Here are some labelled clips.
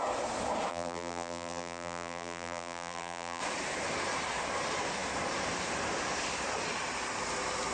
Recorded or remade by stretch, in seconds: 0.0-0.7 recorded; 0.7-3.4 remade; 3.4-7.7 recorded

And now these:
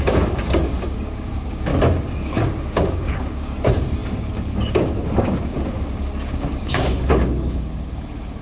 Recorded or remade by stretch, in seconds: 0.0-1.7 remade; 1.7-2.2 recorded; 2.2-8.4 remade

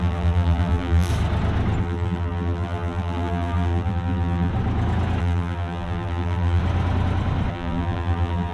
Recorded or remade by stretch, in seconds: 0.0-1.1 remade; 1.1-1.8 recorded; 1.8-4.5 remade; 4.5-5.2 recorded; 5.2-6.6 remade; 6.6-7.5 recorded; 7.5-8.5 remade

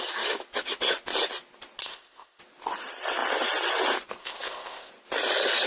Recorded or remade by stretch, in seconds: 0.0-1.8 recorded; 1.8-2.4 remade; 2.4-4.2 recorded; 4.2-4.9 remade; 4.9-5.7 recorded

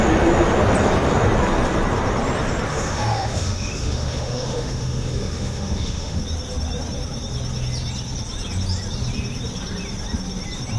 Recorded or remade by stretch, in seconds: 0.0-2.7 recorded; 2.7-6.2 remade; 6.2-10.8 recorded